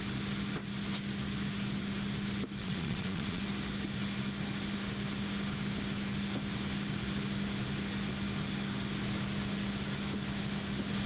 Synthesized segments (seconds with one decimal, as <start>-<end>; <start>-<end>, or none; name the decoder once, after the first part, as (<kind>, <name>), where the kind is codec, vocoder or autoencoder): 2.6-3.4 (vocoder, Vocos)